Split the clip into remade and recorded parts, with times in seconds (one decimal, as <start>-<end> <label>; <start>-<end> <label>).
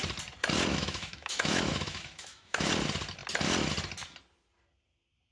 0.0-0.7 recorded; 0.7-2.7 remade; 2.7-5.3 recorded